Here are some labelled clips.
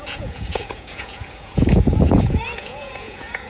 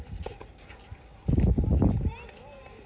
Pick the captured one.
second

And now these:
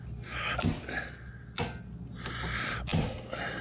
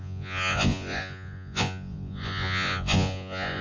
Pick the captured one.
first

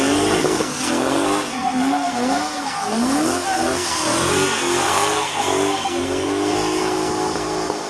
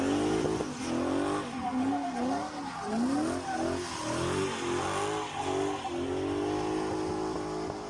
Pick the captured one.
second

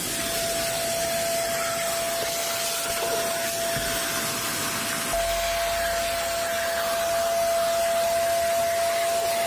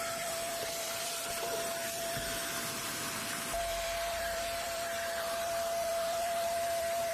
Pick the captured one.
first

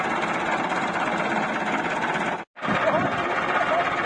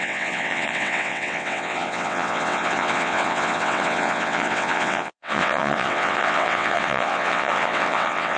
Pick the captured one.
first